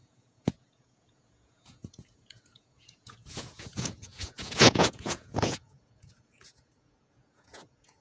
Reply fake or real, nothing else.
fake